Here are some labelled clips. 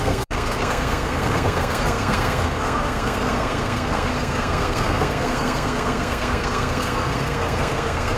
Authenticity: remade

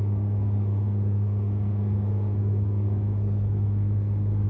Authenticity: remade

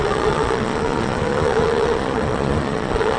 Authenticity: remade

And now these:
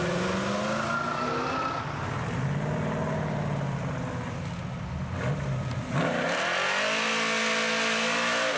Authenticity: recorded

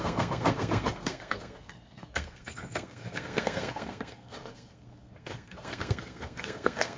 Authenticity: remade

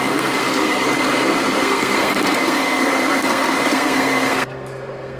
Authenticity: remade